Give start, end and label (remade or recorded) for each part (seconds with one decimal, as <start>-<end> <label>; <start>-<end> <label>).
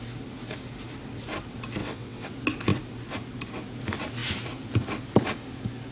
0.0-1.8 recorded; 1.8-2.3 remade; 2.3-5.9 recorded